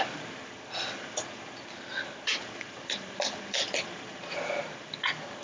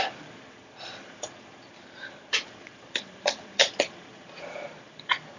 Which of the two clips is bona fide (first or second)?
first